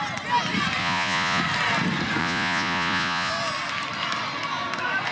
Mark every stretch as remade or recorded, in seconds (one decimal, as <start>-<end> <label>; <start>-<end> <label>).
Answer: 0.0-0.8 recorded; 0.8-1.4 remade; 1.4-2.2 recorded; 2.2-3.3 remade; 3.3-5.1 recorded